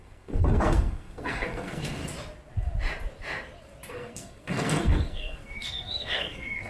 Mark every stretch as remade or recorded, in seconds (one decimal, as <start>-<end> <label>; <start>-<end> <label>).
0.0-2.0 remade; 2.0-3.9 recorded; 3.9-6.7 remade